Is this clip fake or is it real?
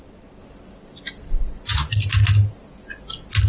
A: real